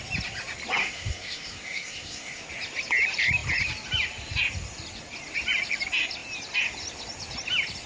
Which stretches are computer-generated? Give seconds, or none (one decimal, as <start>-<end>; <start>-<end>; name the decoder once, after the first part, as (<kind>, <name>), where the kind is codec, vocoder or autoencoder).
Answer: 0.8-2.4 (codec, SNAC)